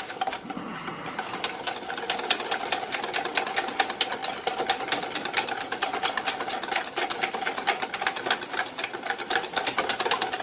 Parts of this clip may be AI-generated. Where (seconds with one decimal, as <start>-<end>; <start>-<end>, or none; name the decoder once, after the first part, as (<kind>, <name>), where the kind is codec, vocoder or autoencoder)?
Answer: none